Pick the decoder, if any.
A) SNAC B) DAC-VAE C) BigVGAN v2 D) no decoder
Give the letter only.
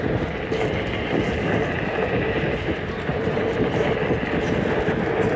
D